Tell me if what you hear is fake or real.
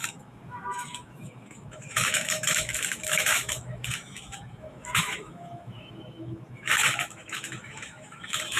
fake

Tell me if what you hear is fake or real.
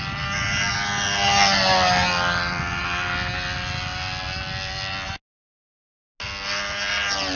real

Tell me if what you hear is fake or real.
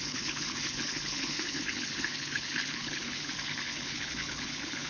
fake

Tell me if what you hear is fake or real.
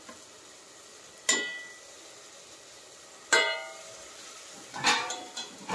real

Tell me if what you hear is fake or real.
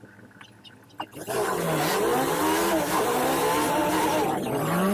real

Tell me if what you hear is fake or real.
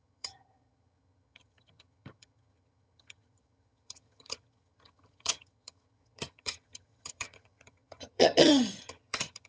fake